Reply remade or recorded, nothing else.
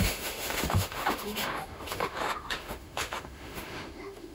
remade